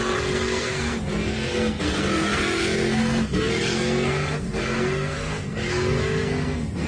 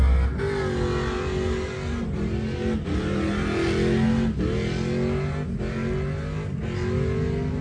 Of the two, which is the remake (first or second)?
first